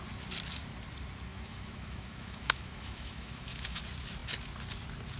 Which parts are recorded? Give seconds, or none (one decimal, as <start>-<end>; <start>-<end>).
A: 0.0-1.3; 3.8-5.2